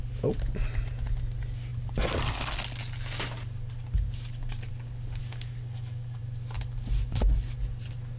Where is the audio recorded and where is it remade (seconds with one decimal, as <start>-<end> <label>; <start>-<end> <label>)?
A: 0.0-5.2 recorded; 5.2-6.2 remade; 6.2-8.2 recorded